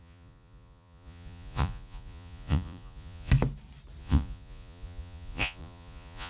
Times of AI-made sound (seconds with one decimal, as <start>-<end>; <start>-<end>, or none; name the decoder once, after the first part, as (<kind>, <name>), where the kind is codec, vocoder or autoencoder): 0.0-3.3 (vocoder, Vocos); 4.0-6.3